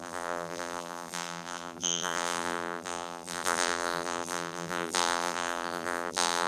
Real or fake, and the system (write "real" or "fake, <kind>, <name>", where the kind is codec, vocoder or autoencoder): fake, vocoder, BigVGAN v2